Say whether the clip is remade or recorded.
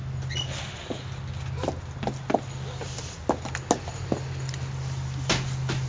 recorded